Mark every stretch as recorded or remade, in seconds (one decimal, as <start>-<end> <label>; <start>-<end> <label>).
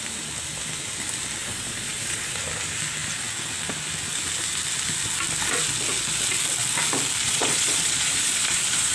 0.0-1.4 recorded; 1.4-2.4 remade; 2.4-7.2 recorded; 7.2-8.9 remade